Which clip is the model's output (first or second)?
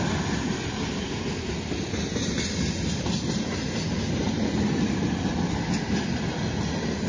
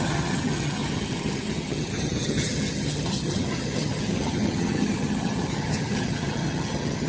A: second